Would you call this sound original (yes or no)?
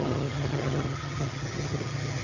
no